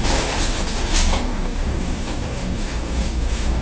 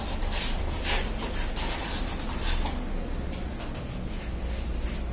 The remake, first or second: first